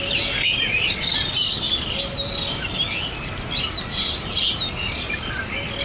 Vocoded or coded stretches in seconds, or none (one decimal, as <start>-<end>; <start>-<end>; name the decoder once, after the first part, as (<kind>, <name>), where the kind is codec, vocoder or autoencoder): none